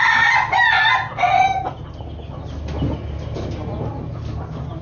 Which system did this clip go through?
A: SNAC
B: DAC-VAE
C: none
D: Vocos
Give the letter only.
C